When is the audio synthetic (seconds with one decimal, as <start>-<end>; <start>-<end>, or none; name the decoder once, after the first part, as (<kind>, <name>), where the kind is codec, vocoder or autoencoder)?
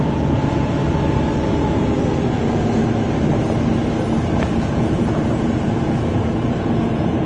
0.0-0.8 (vocoder, Vocos); 1.5-2.8; 4.4-7.3